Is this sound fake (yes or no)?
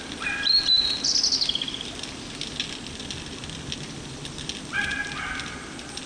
no